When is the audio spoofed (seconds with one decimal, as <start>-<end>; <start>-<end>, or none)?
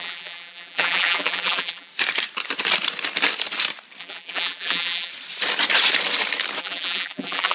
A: 0.0-1.9; 4.0-5.1; 6.6-7.5